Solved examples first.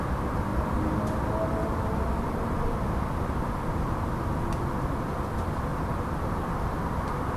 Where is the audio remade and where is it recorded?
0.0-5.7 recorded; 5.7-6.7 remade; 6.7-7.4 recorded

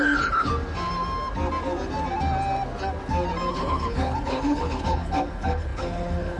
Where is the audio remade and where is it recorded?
0.0-0.5 remade; 0.5-3.5 recorded; 3.5-6.4 remade

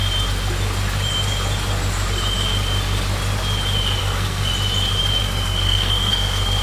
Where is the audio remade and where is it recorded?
0.0-4.0 recorded; 4.0-4.5 remade; 4.5-5.2 recorded; 5.2-6.6 remade

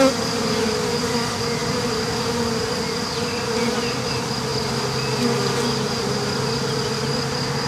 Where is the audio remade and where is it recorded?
0.0-7.7 recorded

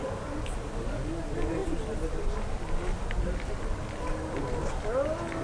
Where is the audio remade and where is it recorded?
0.0-5.4 recorded